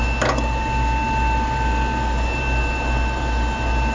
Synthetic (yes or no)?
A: no